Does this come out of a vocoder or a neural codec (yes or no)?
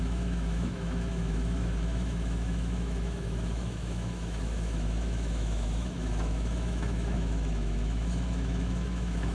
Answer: yes